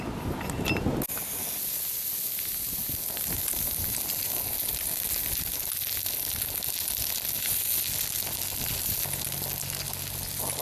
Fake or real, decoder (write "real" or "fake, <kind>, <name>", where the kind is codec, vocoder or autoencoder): real